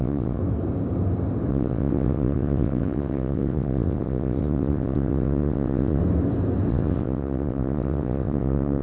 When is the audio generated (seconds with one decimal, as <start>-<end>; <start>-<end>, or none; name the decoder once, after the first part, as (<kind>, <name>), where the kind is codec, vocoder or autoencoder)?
0.0-0.4 (vocoder, WaveNeXt); 1.5-6.0; 6.7-8.8